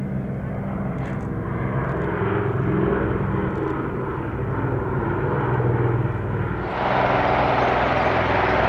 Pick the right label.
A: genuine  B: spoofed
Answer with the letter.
A